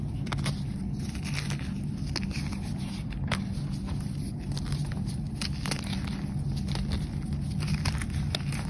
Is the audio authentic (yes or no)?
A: yes